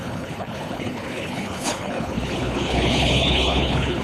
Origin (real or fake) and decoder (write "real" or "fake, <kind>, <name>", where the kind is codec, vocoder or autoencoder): fake, codec, HILCodec